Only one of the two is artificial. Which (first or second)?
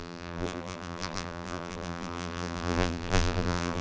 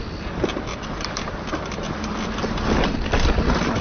first